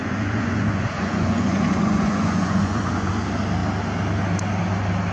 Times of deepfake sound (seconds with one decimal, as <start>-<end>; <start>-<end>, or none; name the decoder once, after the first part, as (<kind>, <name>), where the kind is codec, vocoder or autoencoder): 0.0-3.1 (vocoder, Vocos)